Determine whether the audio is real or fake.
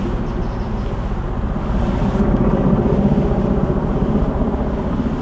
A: real